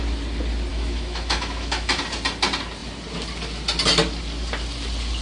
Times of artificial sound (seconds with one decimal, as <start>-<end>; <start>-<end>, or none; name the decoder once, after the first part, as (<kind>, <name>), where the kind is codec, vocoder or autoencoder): 0.7-2.0 (autoencoder, DAC-VAE)